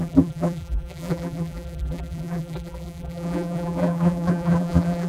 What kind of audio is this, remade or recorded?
remade